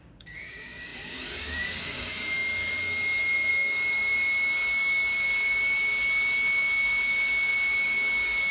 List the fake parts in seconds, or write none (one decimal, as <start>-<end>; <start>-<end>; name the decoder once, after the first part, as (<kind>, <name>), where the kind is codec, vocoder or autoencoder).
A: 0.0-8.5 (codec, DAC)